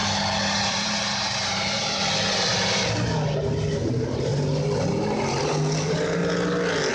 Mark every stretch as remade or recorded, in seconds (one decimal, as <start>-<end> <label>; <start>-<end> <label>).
0.0-0.7 recorded; 0.7-2.0 remade; 2.0-3.9 recorded; 3.9-4.3 remade; 4.3-5.8 recorded; 5.8-6.2 remade; 6.2-6.9 recorded